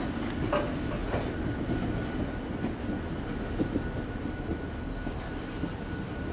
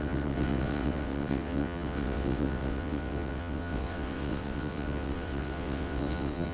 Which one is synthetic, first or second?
second